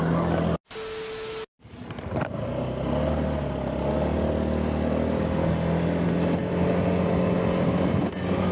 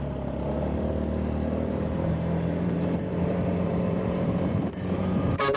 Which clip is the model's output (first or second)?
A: second